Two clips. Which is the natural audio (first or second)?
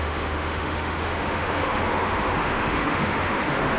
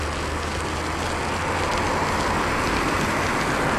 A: second